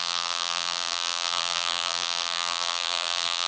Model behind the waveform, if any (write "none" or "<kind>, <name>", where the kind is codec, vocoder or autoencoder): vocoder, BigVGAN v2